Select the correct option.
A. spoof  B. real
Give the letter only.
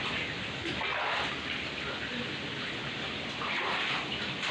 B